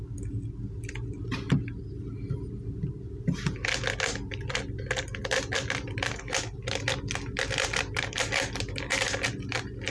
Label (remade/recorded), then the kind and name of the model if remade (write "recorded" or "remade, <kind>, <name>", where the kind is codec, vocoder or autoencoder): recorded